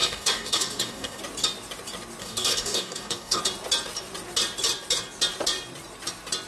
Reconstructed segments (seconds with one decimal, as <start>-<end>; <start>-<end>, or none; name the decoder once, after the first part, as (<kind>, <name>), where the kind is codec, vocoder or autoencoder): 0.0-1.2 (codec, DAC); 2.2-3.4